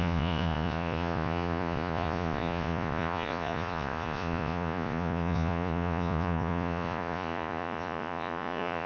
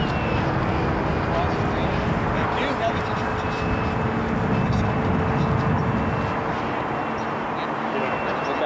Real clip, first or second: second